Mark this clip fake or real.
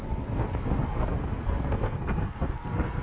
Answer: fake